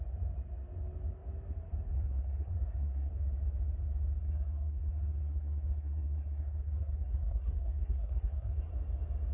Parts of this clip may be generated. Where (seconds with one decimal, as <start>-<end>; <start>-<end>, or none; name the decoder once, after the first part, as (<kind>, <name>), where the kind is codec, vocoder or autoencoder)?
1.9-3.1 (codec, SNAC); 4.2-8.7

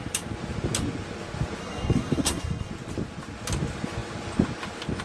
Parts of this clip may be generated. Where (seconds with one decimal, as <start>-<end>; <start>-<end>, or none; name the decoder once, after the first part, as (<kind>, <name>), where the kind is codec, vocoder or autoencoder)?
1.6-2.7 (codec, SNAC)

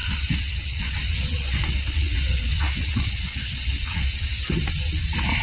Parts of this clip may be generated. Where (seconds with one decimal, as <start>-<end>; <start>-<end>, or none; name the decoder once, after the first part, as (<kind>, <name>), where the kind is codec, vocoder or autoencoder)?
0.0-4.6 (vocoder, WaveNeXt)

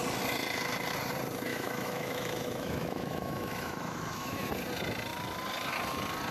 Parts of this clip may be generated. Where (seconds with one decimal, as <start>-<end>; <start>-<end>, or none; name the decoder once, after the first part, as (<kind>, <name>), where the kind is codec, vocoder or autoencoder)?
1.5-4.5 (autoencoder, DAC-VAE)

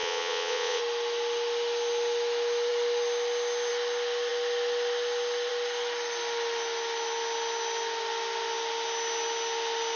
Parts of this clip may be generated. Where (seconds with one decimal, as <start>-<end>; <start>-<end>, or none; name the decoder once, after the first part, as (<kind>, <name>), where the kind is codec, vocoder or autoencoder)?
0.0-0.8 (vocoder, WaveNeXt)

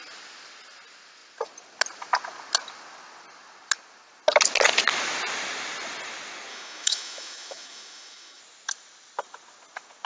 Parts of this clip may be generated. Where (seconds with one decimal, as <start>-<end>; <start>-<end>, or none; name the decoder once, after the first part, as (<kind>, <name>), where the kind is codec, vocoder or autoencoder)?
6.5-8.4 (autoencoder, DAC-VAE)